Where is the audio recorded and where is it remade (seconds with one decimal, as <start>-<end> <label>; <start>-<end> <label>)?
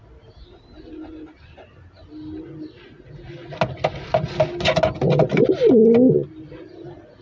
0.0-7.2 recorded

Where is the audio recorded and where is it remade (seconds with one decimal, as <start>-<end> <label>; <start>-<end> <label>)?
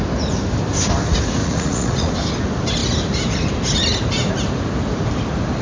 0.0-1.4 recorded; 1.4-2.1 remade; 2.1-5.6 recorded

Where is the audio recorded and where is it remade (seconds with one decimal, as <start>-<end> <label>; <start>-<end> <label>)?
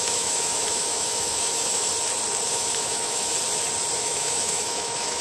0.0-1.9 remade; 1.9-2.5 recorded; 2.5-3.3 remade; 3.3-4.0 recorded; 4.0-5.2 remade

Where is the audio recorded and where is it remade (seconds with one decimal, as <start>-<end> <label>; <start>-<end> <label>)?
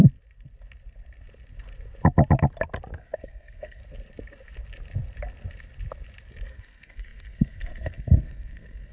0.0-3.0 recorded; 3.0-3.8 remade; 3.8-6.5 recorded; 6.5-8.9 remade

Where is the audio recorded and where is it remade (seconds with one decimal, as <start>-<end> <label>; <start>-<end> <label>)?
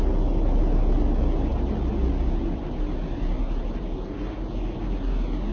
0.0-5.5 recorded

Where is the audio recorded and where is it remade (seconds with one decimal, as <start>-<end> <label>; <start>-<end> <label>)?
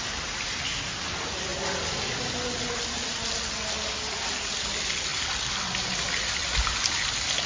0.0-7.5 recorded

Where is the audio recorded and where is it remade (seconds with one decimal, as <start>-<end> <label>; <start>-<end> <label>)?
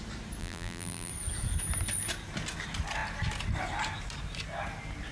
0.0-0.4 recorded; 0.4-1.1 remade; 1.1-5.1 recorded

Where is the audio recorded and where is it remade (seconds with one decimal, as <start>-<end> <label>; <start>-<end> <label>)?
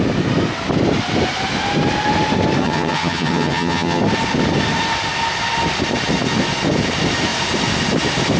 0.0-2.6 recorded; 2.6-4.0 remade; 4.0-8.4 recorded